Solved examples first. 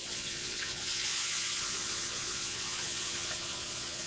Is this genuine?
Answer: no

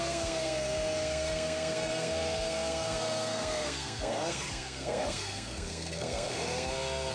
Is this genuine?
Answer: no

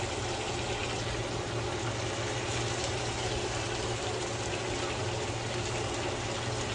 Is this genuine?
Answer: yes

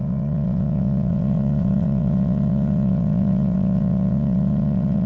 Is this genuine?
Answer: no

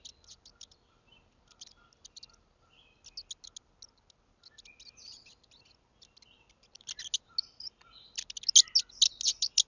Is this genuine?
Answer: yes